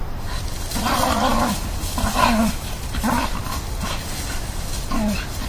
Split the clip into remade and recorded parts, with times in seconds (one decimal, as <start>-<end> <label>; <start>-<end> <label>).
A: 0.0-5.5 recorded